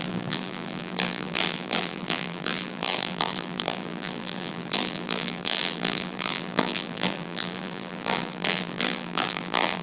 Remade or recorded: remade